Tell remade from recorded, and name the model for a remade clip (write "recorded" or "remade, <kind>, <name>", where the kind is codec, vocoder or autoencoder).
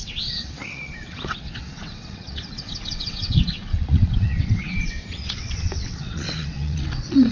remade, vocoder, WaveNeXt